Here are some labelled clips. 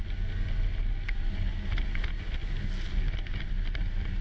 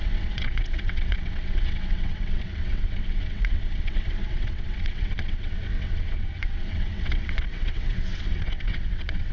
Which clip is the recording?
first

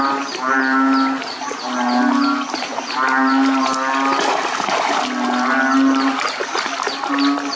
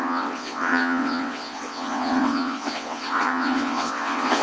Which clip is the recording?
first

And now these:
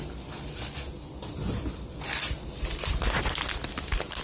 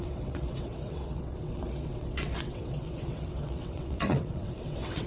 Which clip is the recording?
first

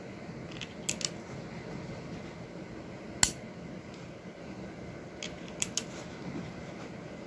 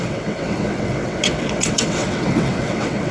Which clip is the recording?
first